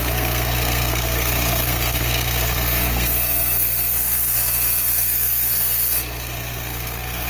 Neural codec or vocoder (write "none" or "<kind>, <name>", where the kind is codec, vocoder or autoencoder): codec, SNAC